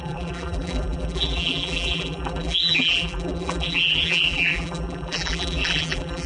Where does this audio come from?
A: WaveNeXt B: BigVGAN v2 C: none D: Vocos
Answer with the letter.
B